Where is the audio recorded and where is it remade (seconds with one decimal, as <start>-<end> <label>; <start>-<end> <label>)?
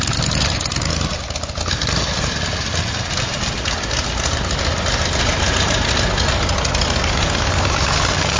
0.0-8.4 recorded